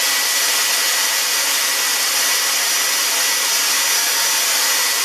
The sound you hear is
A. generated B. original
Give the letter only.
B